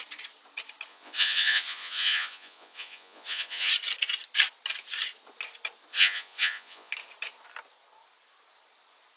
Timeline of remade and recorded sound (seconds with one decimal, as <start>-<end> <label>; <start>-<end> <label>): 0.0-0.9 recorded; 0.9-3.7 remade; 3.7-5.9 recorded; 5.9-6.9 remade; 6.9-9.2 recorded